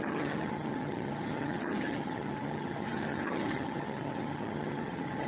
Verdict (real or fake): fake